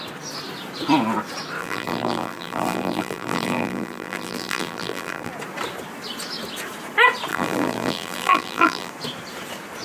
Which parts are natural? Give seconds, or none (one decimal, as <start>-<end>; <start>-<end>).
0.0-1.6; 5.3-7.3; 8.9-9.8

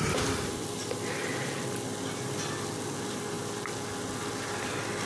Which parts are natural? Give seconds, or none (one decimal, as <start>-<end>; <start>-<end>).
1.2-4.3